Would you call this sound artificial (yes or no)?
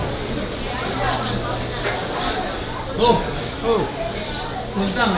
no